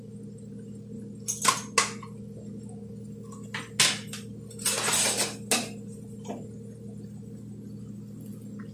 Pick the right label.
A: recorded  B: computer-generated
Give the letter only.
A